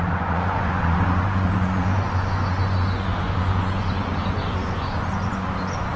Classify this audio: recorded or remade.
remade